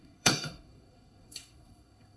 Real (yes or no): no